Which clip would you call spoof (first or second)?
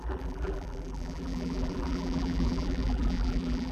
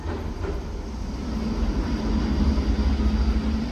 first